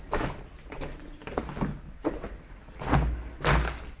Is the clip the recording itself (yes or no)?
yes